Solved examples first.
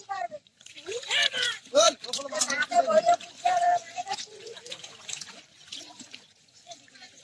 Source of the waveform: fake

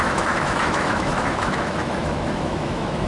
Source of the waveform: fake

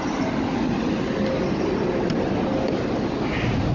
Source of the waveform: real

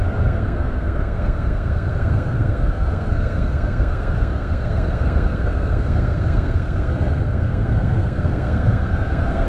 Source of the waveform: fake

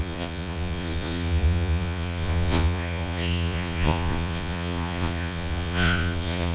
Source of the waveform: fake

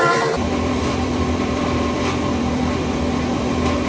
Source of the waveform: fake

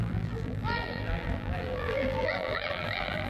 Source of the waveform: fake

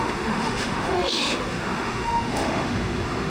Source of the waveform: fake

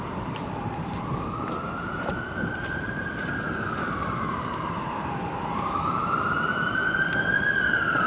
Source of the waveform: fake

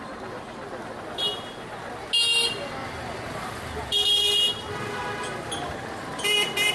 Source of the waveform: real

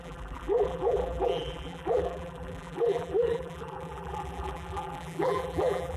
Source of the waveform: fake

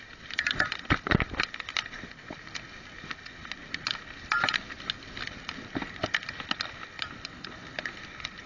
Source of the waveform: real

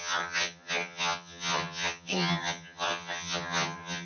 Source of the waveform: fake